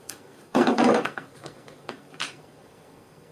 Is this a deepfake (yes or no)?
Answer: yes